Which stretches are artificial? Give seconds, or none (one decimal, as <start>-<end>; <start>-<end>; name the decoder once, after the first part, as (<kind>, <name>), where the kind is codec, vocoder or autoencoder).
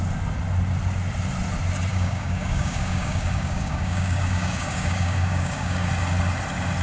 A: 1.9-5.9 (codec, DAC)